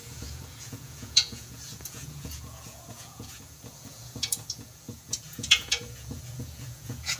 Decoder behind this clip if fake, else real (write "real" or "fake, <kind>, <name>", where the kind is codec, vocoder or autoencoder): fake, vocoder, Vocos